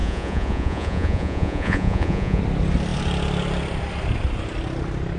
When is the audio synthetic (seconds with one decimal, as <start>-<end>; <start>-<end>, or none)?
0.0-2.4